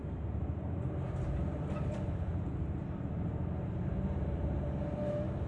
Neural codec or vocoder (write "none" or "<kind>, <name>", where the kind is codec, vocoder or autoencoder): vocoder, BigVGAN v2